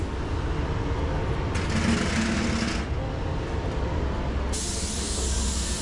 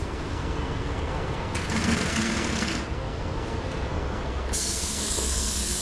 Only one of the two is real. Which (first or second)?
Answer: first